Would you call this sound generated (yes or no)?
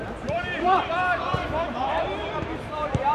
yes